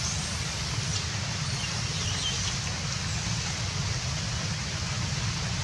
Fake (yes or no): no